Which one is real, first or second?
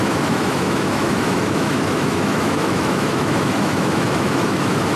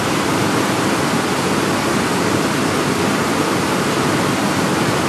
second